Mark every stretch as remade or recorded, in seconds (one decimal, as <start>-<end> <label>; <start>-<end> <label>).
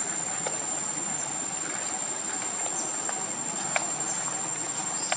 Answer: 0.0-5.2 recorded